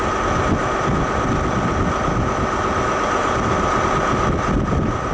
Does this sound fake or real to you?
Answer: real